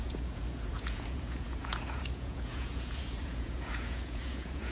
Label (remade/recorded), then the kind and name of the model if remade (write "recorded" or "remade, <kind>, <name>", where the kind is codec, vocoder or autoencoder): remade, vocoder, Vocos